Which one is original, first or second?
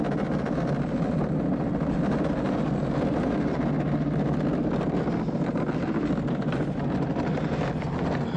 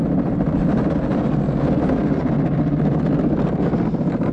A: first